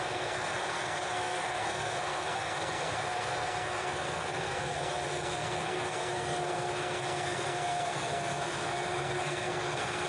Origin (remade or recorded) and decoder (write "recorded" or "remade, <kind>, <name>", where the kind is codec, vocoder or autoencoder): remade, codec, SNAC